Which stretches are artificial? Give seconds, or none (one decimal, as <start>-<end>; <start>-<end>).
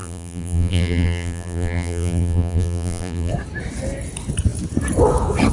0.0-3.3